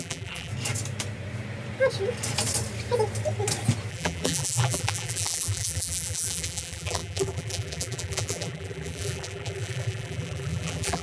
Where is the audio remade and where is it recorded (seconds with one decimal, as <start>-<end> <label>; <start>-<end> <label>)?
0.0-0.5 remade; 0.5-3.9 recorded; 3.9-11.0 remade